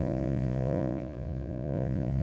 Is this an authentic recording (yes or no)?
no